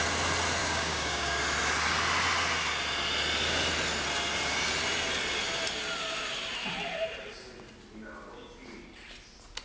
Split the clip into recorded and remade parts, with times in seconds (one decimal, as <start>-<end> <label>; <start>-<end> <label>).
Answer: 0.0-0.6 recorded; 0.6-1.4 remade; 1.4-9.6 recorded